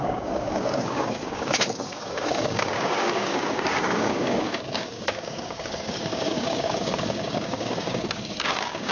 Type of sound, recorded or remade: remade